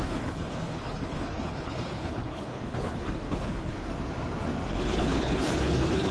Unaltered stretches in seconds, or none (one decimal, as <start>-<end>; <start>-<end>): 3.9-4.7